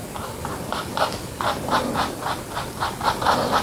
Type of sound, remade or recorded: recorded